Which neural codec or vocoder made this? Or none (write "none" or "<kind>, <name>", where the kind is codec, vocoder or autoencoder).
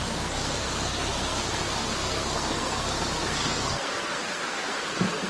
codec, SNAC